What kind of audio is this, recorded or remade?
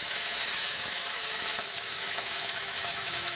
remade